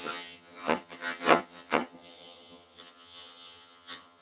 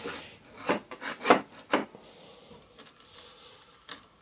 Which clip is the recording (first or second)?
second